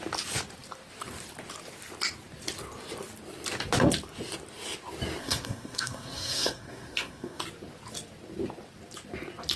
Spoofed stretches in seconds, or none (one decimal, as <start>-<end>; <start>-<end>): 5.2-7.4